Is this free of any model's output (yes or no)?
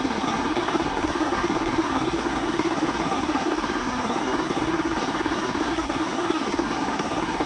no